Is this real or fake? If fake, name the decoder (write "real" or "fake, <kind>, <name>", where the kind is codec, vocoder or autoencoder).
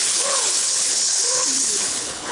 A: fake, codec, HILCodec